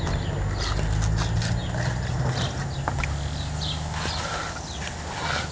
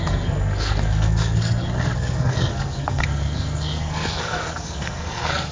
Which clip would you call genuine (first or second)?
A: first